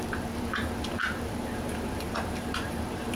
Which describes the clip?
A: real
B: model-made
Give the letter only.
B